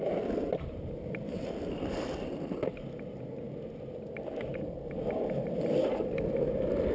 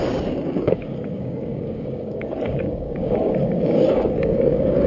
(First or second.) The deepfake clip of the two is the second